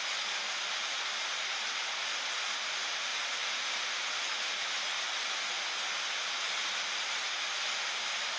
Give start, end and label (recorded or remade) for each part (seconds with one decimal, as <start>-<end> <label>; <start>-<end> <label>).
0.0-8.4 recorded